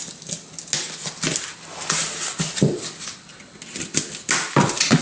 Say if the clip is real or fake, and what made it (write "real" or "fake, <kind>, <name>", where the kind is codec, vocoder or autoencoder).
real